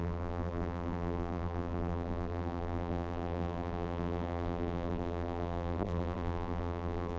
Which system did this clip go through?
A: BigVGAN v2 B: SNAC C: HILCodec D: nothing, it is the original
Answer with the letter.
A